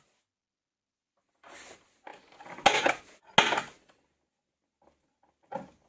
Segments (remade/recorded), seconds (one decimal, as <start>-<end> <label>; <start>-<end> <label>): 0.0-5.9 recorded